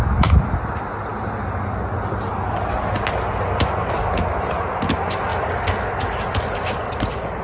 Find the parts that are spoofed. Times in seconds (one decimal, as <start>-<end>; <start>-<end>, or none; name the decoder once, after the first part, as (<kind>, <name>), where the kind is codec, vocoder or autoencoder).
5.3-5.8 (vocoder, BigVGAN v2)